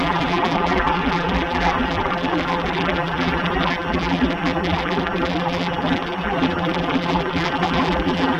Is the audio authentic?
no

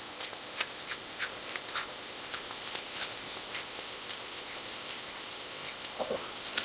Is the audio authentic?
no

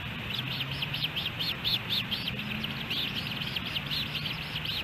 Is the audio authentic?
yes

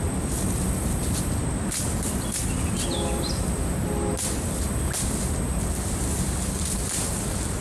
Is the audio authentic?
yes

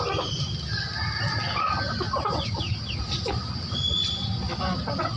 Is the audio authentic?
yes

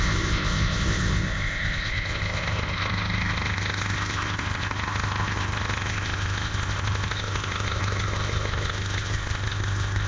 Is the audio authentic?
no